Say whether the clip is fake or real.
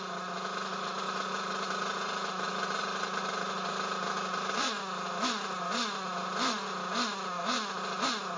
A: real